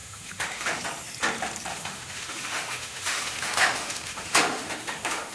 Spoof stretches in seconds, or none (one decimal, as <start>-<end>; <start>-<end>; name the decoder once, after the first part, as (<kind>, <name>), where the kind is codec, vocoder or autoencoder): 0.0-0.8 (autoencoder, DAC-VAE); 1.7-5.3